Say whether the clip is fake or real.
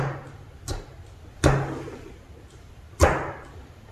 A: real